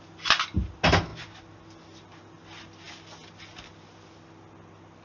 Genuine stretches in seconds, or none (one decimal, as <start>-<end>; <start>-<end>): 0.0-5.0